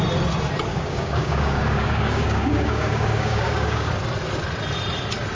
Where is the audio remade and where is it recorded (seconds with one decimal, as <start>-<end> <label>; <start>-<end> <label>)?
0.0-0.7 recorded; 0.7-3.9 remade; 3.9-5.3 recorded